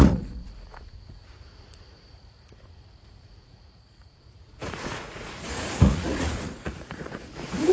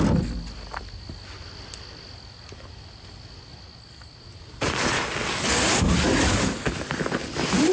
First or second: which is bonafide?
second